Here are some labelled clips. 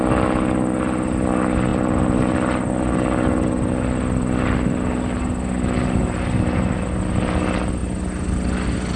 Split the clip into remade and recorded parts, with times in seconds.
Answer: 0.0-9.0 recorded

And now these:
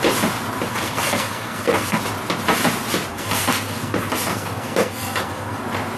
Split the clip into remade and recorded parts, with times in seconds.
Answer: 0.0-0.7 recorded; 0.7-2.0 remade; 2.0-3.1 recorded; 3.1-5.6 remade; 5.6-6.0 recorded

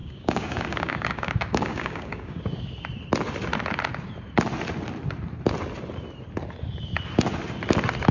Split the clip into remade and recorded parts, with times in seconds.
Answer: 0.0-2.4 remade; 2.4-8.1 recorded

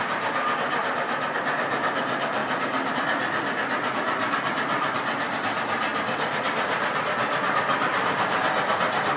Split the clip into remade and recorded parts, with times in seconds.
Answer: 0.0-9.2 recorded